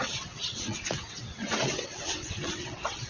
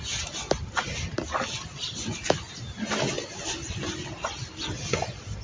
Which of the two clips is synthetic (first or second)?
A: first